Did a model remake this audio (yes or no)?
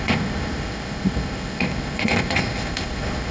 yes